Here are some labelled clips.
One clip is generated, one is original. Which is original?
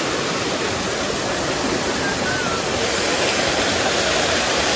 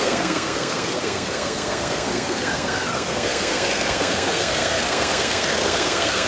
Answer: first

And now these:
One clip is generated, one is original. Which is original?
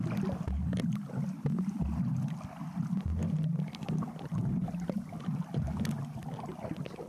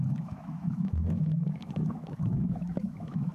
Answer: first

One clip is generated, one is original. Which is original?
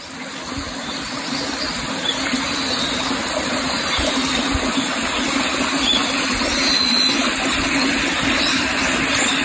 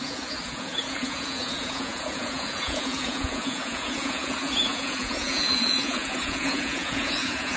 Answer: first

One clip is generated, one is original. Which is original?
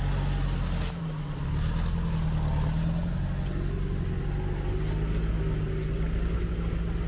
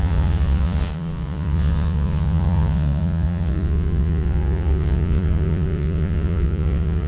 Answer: first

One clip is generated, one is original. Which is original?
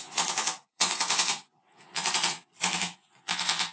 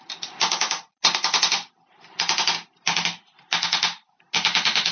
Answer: second